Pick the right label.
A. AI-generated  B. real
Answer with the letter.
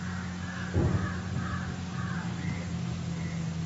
B